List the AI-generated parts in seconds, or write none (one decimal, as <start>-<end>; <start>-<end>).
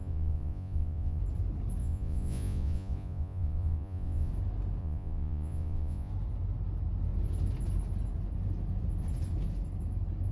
0.0-1.2; 1.8-4.3; 4.8-6.1